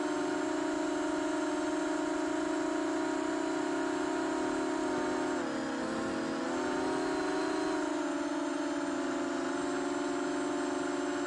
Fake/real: real